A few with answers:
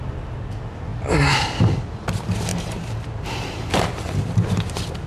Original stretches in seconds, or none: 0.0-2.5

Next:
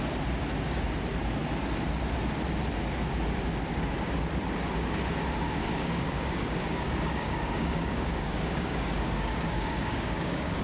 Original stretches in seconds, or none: 0.0-5.6

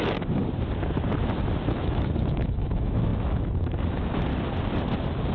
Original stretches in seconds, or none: 0.4-1.7; 4.3-5.3

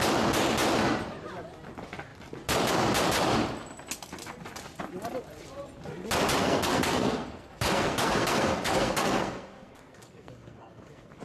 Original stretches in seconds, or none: 0.0-6.4

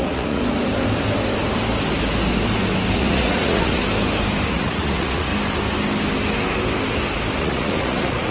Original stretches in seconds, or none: 0.4-3.0; 3.8-4.5; 5.3-7.4